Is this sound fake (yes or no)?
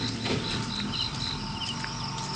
no